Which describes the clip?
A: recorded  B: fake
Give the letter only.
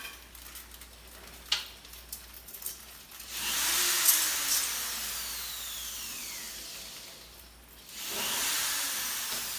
A